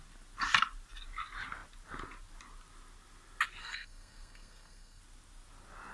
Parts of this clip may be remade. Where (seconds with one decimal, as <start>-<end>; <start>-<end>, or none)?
3.6-5.0